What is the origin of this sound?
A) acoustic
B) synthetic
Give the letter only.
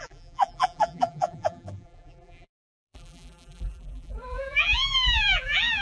B